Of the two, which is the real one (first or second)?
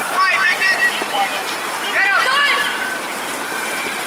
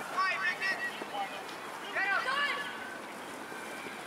second